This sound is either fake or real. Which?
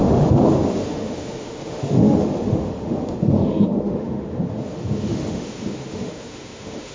fake